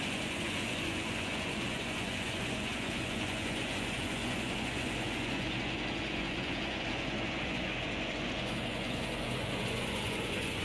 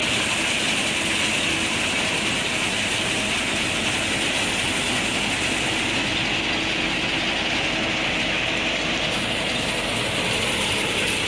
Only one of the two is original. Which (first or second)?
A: second